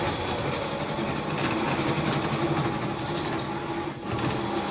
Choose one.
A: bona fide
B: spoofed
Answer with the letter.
A